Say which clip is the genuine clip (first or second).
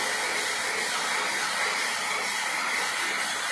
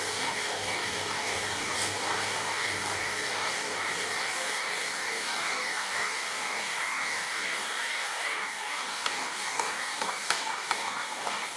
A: first